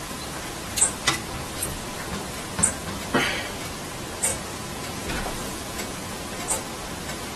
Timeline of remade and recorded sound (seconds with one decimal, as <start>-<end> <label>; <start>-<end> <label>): 0.0-4.3 recorded; 4.3-6.0 remade; 6.0-7.4 recorded